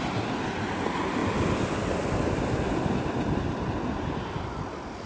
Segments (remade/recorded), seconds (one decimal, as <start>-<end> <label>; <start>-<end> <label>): 0.0-5.1 recorded